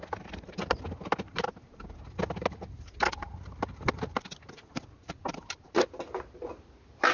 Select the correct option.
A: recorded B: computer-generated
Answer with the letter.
A